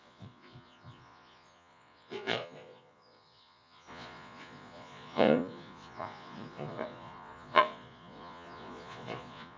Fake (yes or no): yes